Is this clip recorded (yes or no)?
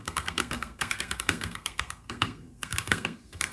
no